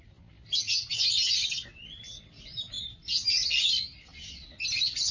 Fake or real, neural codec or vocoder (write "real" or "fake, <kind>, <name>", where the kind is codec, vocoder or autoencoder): real